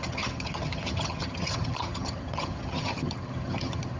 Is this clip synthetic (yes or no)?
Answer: yes